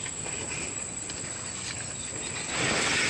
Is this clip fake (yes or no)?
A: no